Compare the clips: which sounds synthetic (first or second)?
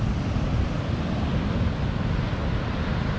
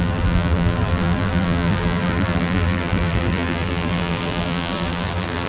second